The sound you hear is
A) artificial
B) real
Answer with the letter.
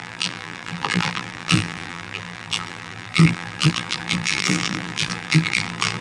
A